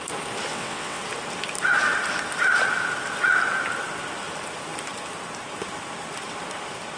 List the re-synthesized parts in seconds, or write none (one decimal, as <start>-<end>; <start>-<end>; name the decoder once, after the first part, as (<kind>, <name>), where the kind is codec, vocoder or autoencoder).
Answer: 0.5-1.0 (vocoder, WaveNeXt)